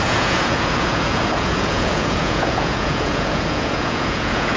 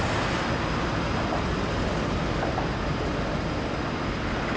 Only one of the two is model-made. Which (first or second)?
first